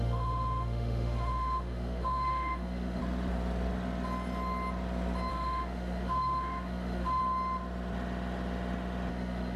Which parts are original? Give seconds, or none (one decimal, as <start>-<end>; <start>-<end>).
3.0-5.3; 7.2-9.1